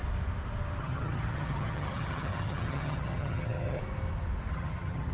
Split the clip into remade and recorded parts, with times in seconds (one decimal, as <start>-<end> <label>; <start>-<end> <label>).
0.0-0.8 recorded; 0.8-3.8 remade; 3.8-4.5 recorded; 4.5-5.1 remade